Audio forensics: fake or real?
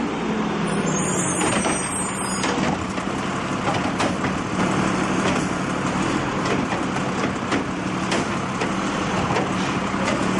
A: real